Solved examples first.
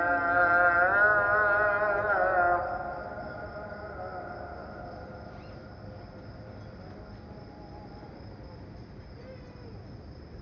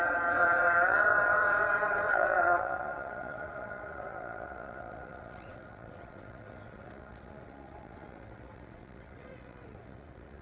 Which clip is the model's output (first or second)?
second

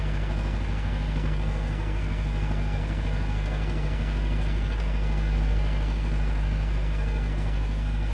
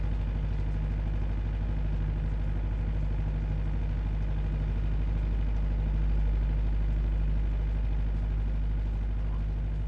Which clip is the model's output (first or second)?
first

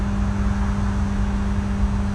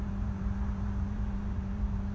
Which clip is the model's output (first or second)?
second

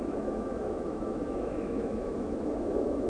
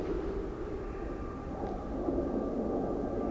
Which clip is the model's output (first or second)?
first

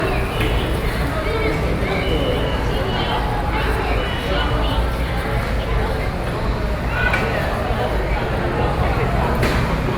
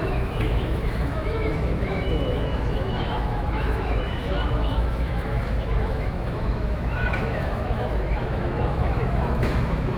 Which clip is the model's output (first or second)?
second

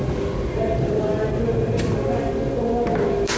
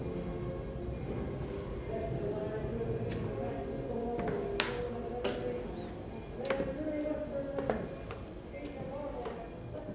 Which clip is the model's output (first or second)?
first